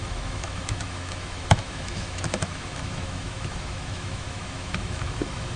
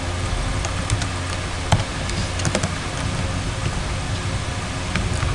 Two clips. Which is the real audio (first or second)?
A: second